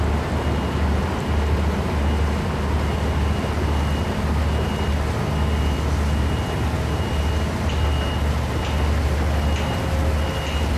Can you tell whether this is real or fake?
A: real